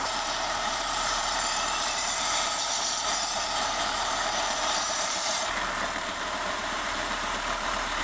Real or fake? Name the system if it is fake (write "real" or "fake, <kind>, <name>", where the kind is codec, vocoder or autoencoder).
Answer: fake, vocoder, BigVGAN v2